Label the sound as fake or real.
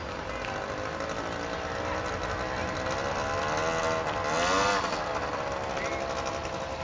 real